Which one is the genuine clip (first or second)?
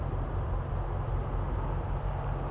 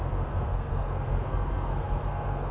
first